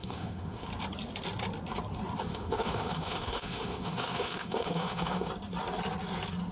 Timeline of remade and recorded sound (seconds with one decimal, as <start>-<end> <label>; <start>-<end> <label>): 0.0-0.7 remade; 0.7-2.3 recorded; 2.3-5.3 remade; 5.3-6.5 recorded